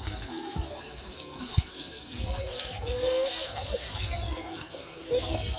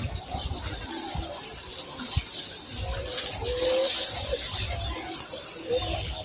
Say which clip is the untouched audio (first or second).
second